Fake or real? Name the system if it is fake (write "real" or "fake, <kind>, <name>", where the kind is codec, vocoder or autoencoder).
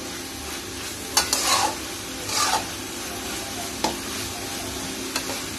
real